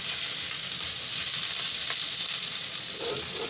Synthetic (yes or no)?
no